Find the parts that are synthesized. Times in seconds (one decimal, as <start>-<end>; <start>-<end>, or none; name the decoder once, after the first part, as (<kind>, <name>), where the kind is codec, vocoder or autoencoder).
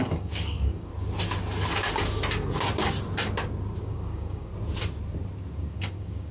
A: 0.0-0.9 (codec, DAC); 3.8-4.5; 5.6-6.3